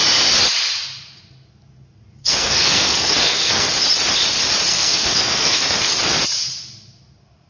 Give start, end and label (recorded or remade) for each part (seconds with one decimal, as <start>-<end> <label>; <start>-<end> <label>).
0.0-2.2 recorded; 2.2-3.7 remade; 3.7-4.7 recorded; 4.7-5.9 remade; 5.9-7.5 recorded